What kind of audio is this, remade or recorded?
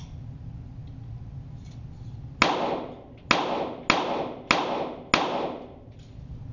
recorded